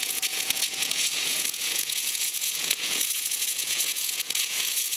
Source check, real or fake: fake